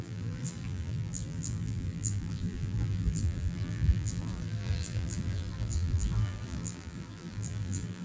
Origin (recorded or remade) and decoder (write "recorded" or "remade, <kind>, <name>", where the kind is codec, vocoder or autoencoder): remade, vocoder, BigVGAN v2